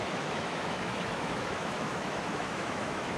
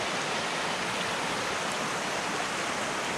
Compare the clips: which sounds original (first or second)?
second